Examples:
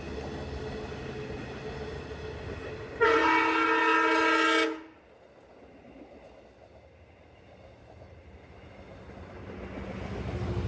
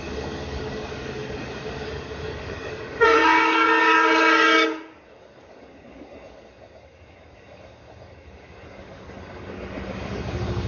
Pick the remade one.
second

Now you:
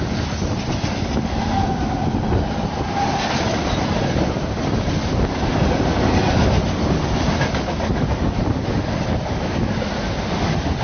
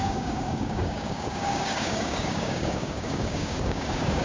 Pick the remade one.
second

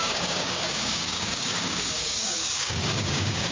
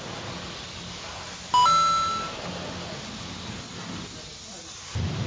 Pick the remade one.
first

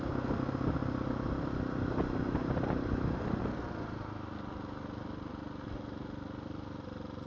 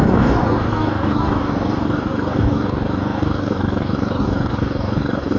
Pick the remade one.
second